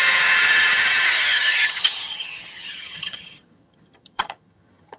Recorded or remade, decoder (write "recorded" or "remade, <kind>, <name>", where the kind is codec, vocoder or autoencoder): remade, vocoder, HiFi-GAN